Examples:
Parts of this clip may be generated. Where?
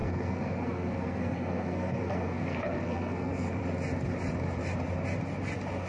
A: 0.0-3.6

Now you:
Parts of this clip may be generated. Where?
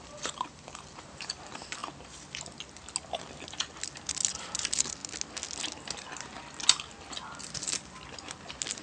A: 0.0-1.8; 4.3-5.0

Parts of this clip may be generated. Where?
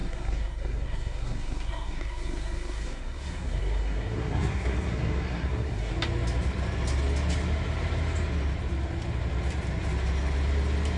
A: 0.0-5.9